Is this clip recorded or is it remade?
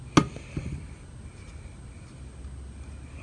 recorded